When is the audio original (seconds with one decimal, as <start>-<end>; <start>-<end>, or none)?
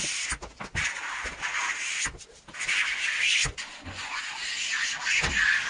0.0-3.5; 4.2-5.7